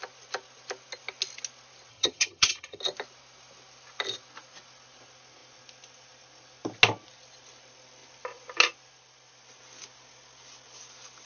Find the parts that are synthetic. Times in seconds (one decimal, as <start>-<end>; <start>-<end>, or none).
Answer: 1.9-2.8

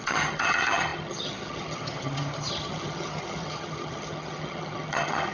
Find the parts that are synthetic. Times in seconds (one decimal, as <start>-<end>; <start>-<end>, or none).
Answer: 0.0-5.3

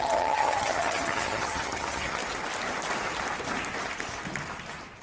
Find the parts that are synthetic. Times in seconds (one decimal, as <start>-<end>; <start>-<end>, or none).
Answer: 0.0-2.2

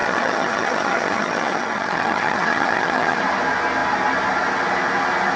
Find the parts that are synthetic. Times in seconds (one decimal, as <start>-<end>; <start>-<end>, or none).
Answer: 0.0-3.2